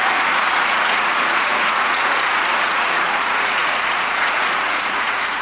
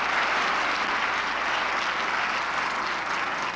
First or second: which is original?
second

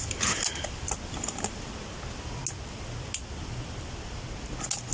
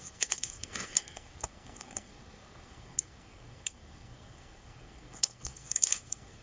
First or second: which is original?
first